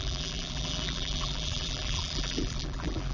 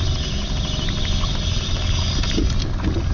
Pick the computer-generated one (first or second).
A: first